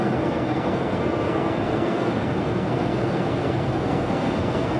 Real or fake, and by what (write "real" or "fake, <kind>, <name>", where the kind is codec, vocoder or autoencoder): fake, codec, SNAC